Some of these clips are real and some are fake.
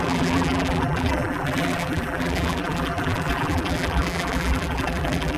fake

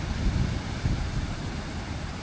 real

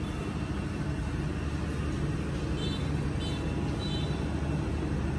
real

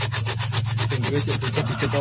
real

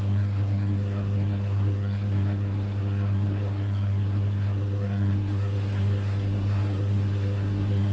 fake